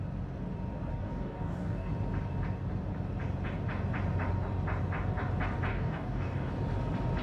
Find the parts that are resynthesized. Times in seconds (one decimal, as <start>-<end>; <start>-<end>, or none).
0.9-1.9; 5.7-6.5